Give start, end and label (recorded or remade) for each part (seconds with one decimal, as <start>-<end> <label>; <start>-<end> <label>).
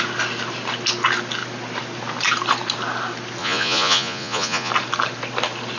0.0-3.4 recorded; 3.4-4.7 remade; 4.7-5.8 recorded